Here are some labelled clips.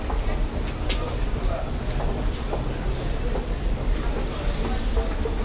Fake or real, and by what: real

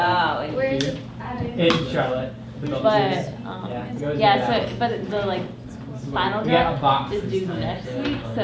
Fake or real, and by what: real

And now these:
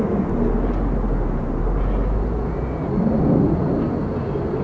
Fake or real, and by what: real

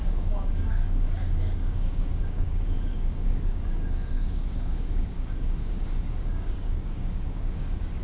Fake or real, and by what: fake, codec, DAC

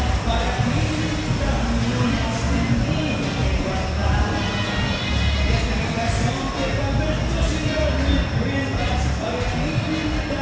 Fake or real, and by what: real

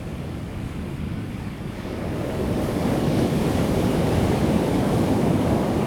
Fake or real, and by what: fake, codec, DAC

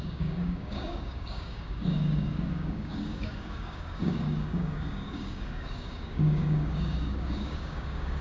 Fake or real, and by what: fake, codec, DAC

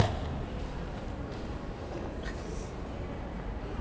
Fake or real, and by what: real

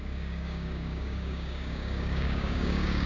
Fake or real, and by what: fake, codec, DAC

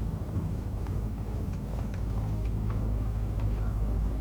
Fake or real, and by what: fake, codec, DAC